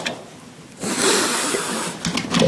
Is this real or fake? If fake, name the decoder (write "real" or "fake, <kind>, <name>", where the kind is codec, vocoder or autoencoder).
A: real